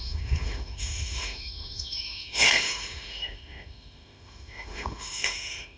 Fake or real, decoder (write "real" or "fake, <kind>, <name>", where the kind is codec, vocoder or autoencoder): fake, autoencoder, DAC-VAE